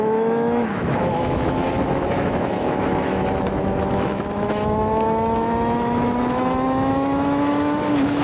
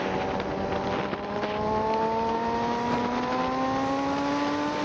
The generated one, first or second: first